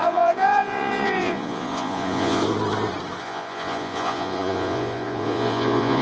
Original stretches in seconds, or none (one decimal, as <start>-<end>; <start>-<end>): 2.4-3.2